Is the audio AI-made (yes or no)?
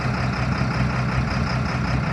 no